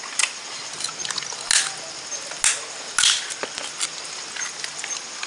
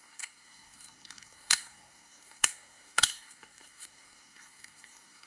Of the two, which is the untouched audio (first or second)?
first